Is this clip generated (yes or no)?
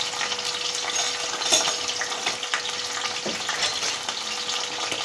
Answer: no